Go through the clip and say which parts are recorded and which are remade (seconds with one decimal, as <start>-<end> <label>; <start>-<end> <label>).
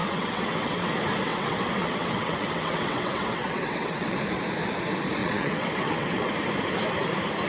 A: 0.0-0.9 remade; 0.9-1.3 recorded; 1.3-4.2 remade; 4.2-5.2 recorded; 5.2-6.3 remade; 6.3-7.5 recorded